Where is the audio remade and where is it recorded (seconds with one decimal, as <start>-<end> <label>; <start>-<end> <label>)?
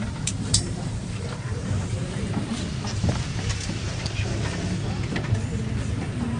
0.0-2.5 remade; 2.5-6.0 recorded; 6.0-6.4 remade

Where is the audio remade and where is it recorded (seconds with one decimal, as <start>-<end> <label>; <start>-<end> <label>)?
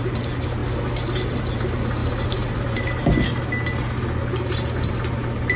0.0-2.0 recorded; 2.0-3.1 remade; 3.1-4.2 recorded; 4.2-4.9 remade; 4.9-5.6 recorded